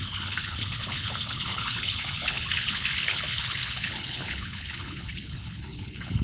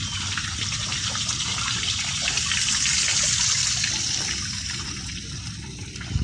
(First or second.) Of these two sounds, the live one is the second